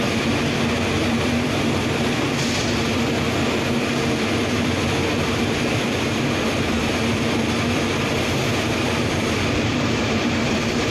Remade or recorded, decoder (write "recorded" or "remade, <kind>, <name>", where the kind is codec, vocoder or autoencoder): remade, vocoder, BigVGAN v2